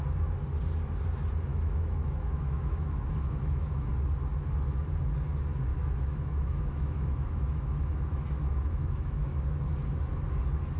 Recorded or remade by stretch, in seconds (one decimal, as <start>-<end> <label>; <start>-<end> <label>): 0.0-1.5 recorded; 1.5-3.9 remade; 3.9-5.7 recorded; 5.7-9.7 remade; 9.7-10.8 recorded